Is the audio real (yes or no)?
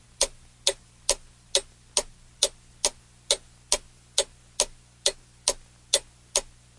yes